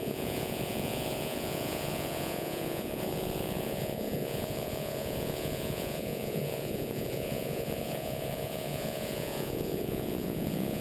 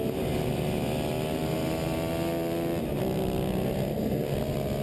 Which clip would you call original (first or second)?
second